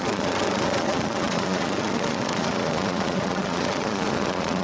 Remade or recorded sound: remade